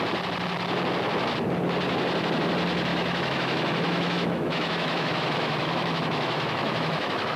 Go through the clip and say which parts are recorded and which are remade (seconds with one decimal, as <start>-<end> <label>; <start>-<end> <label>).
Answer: 0.0-2.9 recorded; 2.9-7.4 remade